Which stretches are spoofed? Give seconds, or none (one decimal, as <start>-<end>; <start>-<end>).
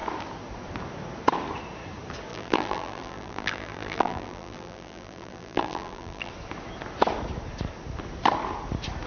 2.3-6.3